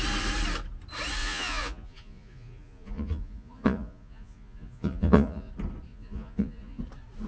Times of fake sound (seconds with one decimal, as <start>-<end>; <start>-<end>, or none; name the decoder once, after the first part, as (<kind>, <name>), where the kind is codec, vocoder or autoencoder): 1.2-5.5 (vocoder, Vocos); 5.9-6.8